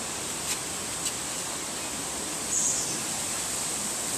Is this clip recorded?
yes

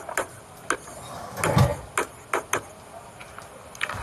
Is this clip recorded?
yes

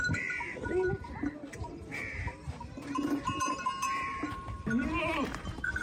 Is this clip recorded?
no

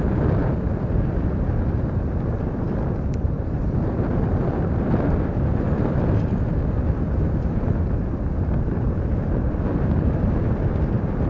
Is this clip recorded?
no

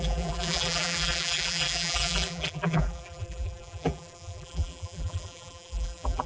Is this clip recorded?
no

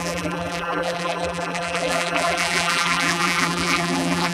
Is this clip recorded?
no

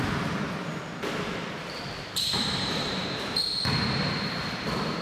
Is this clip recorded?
no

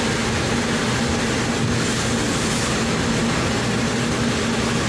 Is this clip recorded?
yes